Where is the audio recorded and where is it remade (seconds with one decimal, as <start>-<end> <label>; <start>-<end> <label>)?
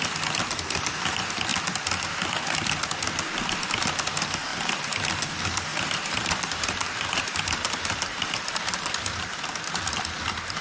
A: 0.0-4.5 recorded; 4.5-5.3 remade; 5.3-5.7 recorded; 5.7-9.4 remade; 9.4-10.6 recorded